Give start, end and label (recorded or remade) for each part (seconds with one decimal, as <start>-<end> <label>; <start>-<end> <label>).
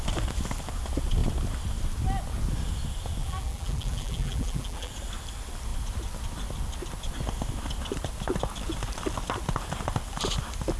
0.0-3.2 recorded; 3.2-4.9 remade; 4.9-10.8 recorded